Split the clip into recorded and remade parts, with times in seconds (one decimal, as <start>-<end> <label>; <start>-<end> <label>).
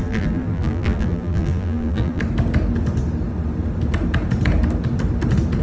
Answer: 0.0-2.2 remade; 2.2-5.6 recorded